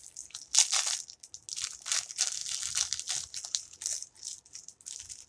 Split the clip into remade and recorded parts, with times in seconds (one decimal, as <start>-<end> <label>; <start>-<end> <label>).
0.0-5.3 recorded